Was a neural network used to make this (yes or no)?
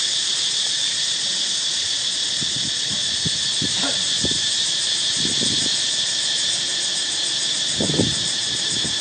no